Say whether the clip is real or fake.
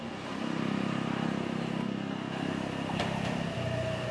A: real